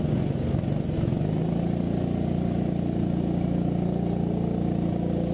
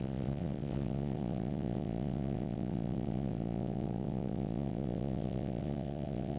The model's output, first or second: second